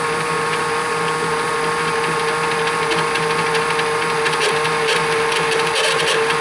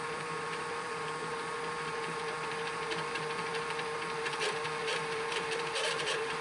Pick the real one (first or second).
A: first